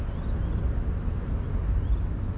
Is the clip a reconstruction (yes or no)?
no